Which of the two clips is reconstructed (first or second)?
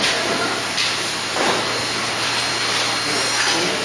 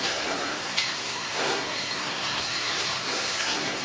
second